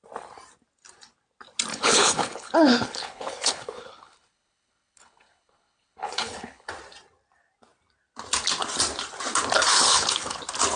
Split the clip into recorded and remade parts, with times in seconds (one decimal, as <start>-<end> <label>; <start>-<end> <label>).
0.0-1.7 recorded; 1.7-6.7 remade; 6.7-9.7 recorded; 9.7-10.4 remade; 10.4-10.8 recorded